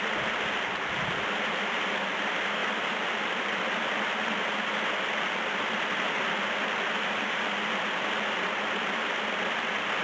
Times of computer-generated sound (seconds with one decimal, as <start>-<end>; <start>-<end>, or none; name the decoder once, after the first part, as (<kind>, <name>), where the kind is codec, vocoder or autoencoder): none